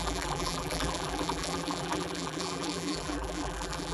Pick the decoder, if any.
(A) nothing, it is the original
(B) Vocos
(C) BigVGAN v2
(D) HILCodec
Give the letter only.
C